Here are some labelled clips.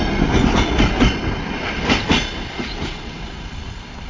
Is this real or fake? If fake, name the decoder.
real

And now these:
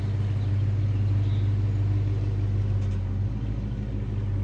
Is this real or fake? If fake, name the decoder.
real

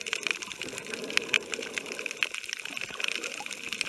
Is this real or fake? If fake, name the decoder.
fake, vocoder, BigVGAN v2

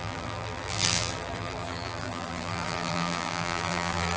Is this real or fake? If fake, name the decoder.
fake, vocoder, BigVGAN v2